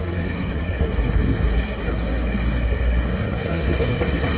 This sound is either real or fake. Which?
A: fake